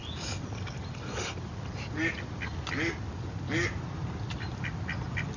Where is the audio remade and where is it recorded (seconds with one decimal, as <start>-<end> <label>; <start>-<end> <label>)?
0.0-5.4 recorded